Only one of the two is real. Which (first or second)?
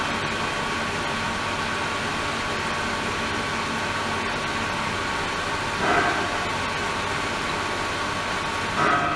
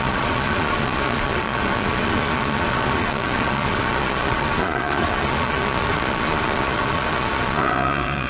first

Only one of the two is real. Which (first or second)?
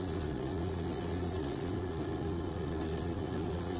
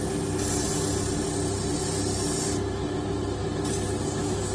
second